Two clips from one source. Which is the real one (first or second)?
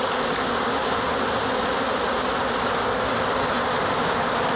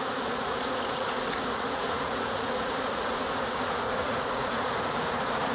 first